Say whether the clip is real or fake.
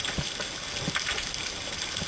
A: real